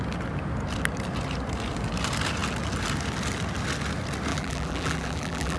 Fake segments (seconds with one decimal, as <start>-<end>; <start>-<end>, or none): 4.3-5.6